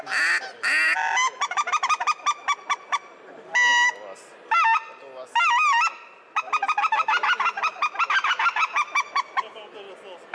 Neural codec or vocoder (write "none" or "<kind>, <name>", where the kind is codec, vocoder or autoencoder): none